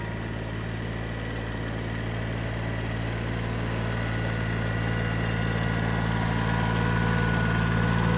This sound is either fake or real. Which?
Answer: real